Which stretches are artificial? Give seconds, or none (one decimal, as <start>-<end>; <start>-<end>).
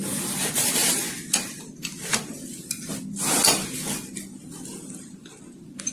none